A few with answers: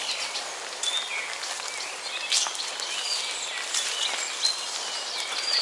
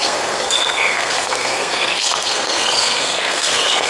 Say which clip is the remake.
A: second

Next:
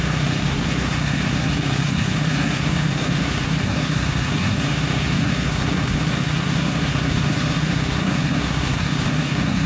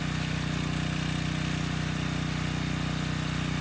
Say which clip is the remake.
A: first